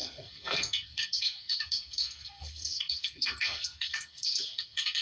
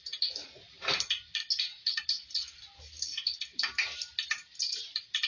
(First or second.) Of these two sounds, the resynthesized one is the first